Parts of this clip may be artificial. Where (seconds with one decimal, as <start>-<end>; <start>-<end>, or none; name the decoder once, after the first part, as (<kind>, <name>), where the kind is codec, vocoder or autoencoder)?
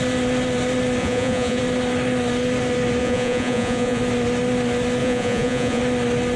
1.0-1.6 (vocoder, Vocos); 3.0-4.0; 5.0-5.8